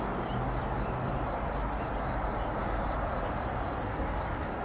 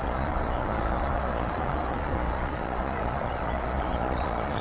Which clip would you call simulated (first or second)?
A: second